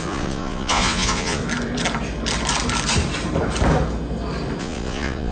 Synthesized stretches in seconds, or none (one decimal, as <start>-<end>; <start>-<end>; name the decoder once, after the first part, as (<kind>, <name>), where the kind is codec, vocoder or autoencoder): 0.0-1.4 (vocoder, Vocos); 4.6-5.3